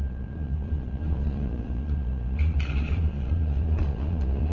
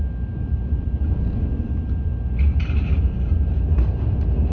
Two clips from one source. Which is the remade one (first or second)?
first